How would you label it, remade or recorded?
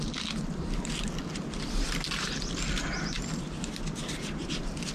recorded